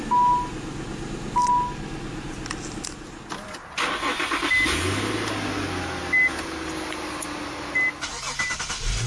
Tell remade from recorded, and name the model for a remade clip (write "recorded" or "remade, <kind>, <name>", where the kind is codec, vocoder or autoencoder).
recorded